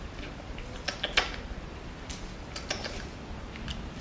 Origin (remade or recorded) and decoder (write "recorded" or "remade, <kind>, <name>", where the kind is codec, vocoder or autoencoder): recorded